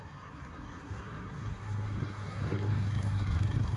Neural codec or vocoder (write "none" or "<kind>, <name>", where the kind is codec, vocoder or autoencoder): codec, SNAC